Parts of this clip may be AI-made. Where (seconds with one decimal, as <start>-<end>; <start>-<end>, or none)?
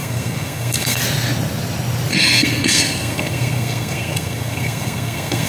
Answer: 0.0-1.0; 2.1-5.5